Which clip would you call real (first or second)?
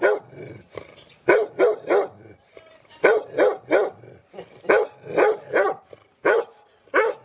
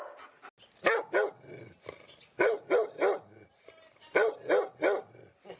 second